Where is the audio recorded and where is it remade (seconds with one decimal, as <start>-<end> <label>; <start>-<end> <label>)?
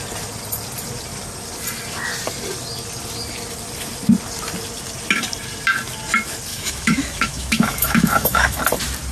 0.0-6.5 recorded; 6.5-8.6 remade; 8.6-9.1 recorded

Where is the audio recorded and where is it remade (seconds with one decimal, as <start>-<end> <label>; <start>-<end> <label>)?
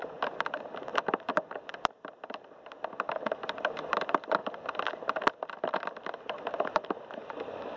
0.0-7.8 recorded